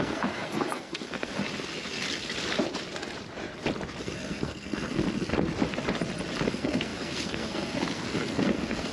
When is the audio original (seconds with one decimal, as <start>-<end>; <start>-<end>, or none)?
1.4-4.0; 5.3-6.5